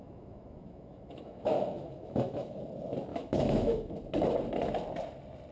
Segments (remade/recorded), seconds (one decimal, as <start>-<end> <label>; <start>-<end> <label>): 0.0-2.6 remade; 2.6-3.1 recorded; 3.1-3.9 remade; 3.9-5.5 recorded